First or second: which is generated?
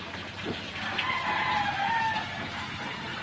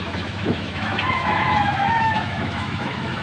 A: second